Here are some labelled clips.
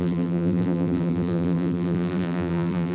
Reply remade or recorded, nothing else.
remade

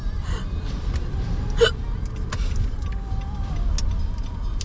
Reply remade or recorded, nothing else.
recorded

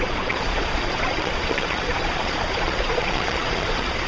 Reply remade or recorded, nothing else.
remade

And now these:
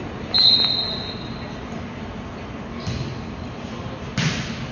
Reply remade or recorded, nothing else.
recorded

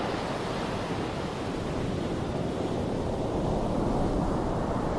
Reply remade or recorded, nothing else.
remade